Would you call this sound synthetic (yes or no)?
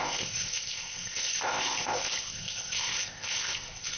yes